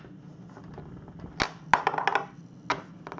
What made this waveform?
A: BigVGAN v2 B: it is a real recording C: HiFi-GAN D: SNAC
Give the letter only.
B